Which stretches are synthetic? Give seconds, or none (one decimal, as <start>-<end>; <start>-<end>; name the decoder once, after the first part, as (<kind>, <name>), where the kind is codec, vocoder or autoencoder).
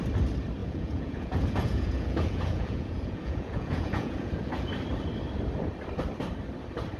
0.6-4.7 (vocoder, Vocos)